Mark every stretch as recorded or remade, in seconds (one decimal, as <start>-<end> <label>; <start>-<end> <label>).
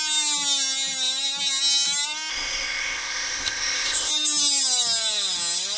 0.0-2.3 recorded; 2.3-4.1 remade; 4.1-5.8 recorded